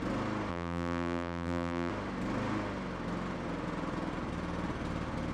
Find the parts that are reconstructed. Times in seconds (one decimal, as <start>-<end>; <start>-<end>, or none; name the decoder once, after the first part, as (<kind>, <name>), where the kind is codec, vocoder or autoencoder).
0.5-1.9 (vocoder, BigVGAN v2)